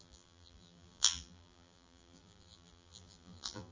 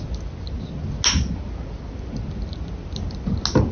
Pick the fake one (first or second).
first